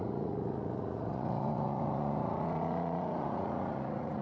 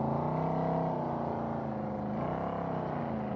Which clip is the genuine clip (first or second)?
second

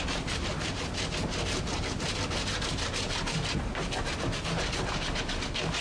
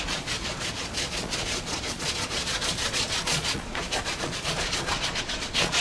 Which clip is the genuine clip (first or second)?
first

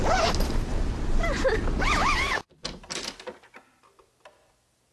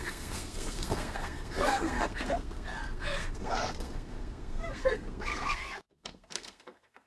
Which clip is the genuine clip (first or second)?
first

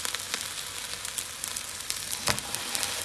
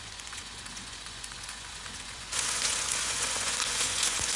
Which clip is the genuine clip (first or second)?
first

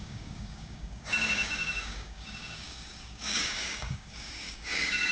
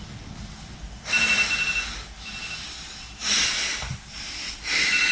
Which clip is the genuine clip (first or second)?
second